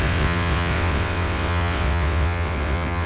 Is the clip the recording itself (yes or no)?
no